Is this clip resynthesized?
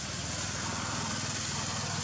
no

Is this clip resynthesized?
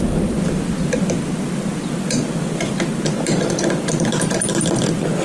no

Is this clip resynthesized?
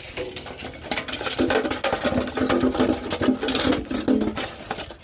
no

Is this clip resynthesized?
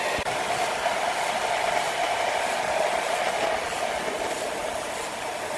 no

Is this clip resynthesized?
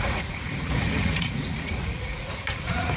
yes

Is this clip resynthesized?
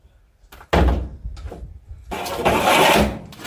no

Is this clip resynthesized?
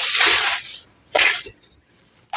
yes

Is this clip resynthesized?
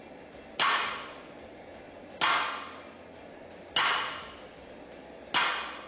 no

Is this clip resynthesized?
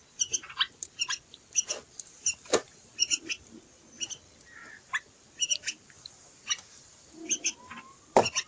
no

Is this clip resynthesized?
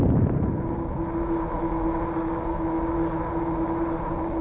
no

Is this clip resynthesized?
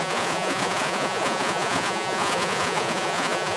yes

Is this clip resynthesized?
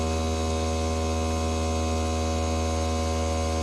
no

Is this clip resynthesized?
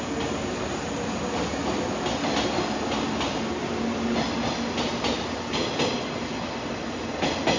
no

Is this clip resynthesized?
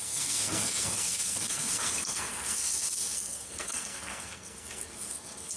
yes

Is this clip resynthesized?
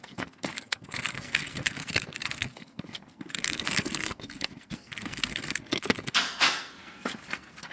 yes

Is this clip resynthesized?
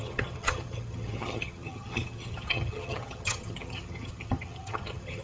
yes